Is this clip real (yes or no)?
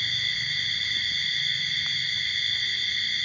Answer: yes